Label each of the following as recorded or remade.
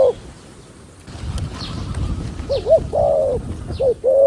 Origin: recorded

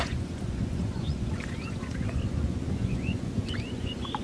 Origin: remade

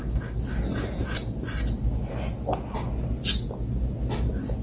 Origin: recorded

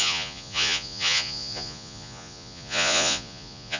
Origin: remade